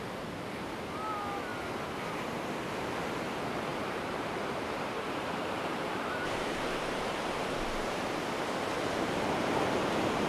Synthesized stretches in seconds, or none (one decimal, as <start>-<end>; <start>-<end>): 3.7-8.2